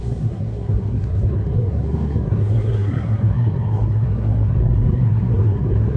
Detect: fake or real fake